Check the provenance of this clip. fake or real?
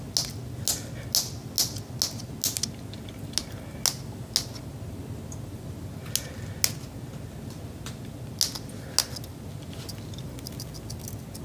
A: real